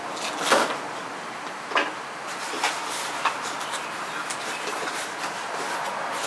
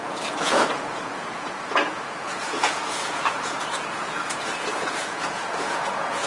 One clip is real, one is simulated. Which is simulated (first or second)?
second